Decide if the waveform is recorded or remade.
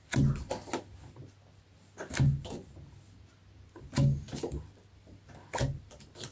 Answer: recorded